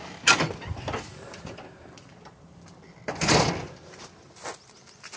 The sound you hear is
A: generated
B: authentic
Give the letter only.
B